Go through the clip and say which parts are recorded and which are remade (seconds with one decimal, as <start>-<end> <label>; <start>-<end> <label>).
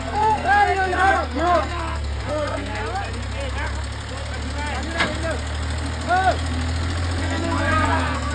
0.0-2.8 remade; 2.8-7.2 recorded; 7.2-8.3 remade